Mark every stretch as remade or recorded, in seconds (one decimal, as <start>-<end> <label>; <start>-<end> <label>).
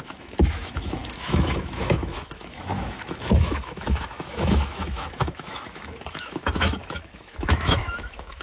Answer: 0.0-8.4 remade